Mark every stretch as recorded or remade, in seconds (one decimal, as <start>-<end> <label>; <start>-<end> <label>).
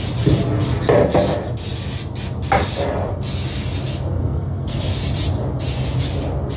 0.0-4.2 recorded; 4.2-4.8 remade; 4.8-6.6 recorded